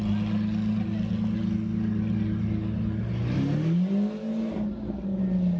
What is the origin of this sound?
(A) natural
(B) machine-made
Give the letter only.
A